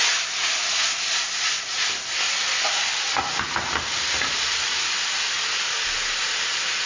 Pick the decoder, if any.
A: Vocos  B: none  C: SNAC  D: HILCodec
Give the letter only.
B